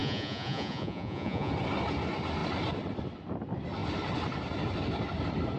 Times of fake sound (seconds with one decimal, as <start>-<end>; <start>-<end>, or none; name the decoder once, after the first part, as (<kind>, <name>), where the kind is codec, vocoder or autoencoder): 0.0-1.5 (vocoder, Vocos)